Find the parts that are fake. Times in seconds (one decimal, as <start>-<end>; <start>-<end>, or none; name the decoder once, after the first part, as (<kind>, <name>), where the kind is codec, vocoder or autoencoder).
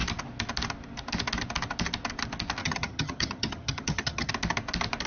2.6-4.3 (vocoder, HiFi-GAN)